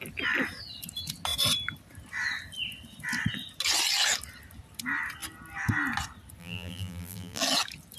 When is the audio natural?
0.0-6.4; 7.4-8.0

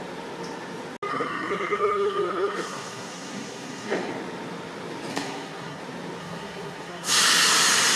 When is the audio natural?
0.0-1.1; 4.1-5.1; 5.8-6.2; 7.2-8.0